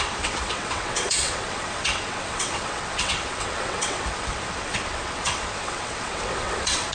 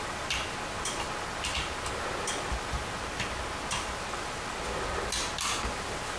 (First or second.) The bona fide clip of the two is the second